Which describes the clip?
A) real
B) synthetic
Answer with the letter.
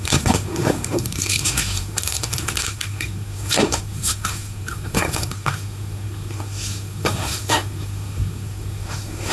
B